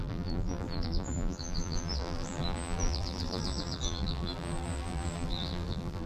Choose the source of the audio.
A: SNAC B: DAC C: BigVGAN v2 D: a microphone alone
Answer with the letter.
C